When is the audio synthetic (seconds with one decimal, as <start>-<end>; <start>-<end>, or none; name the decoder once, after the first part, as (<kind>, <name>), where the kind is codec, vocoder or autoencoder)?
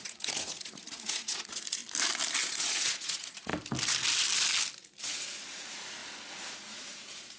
0.0-1.8 (vocoder, Vocos); 2.4-3.5; 5.0-6.0; 6.5-7.4